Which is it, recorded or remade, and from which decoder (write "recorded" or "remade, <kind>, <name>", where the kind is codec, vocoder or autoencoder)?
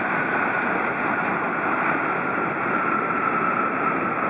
recorded